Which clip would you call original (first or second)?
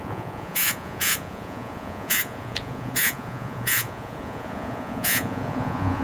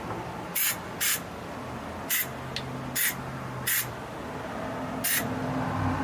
second